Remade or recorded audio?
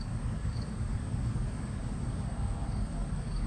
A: remade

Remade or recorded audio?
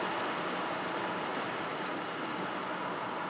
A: recorded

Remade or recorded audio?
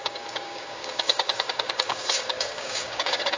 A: remade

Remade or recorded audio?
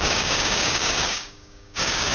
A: remade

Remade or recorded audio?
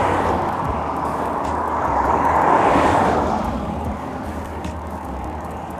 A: remade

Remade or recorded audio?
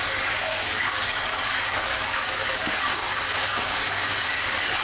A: remade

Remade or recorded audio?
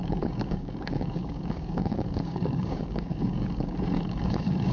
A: remade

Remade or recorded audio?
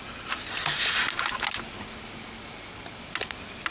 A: recorded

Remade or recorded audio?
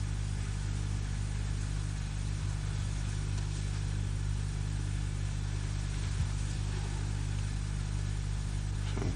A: recorded